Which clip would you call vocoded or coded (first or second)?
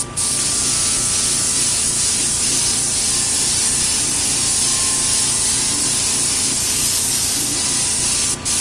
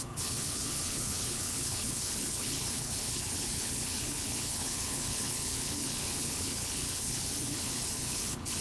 second